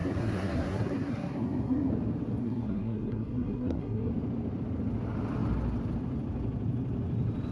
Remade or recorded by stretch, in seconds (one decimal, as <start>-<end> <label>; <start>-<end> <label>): 0.0-1.9 remade; 1.9-2.4 recorded; 2.4-4.1 remade; 4.1-7.5 recorded